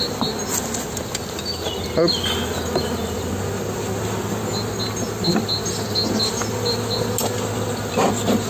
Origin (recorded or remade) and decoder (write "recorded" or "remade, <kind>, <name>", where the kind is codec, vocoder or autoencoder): recorded